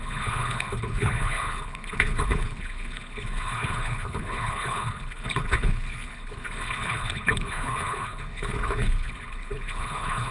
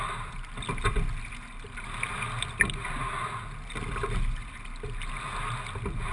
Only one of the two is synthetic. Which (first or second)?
first